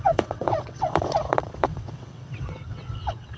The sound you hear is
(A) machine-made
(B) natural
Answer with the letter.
A